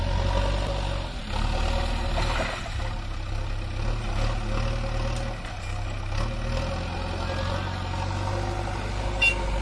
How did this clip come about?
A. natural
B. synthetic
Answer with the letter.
A